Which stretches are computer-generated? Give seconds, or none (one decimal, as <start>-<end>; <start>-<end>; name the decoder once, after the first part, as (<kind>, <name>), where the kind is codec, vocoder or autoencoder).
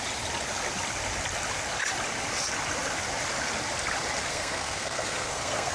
4.3-5.7 (codec, SNAC)